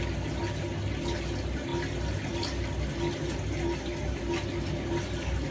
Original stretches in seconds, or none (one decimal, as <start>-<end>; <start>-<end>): 0.0-5.5